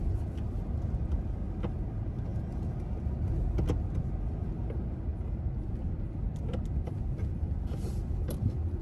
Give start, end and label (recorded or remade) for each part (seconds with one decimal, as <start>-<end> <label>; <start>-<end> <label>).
0.0-8.8 recorded